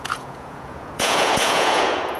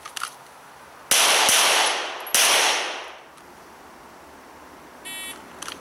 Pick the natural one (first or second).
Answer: second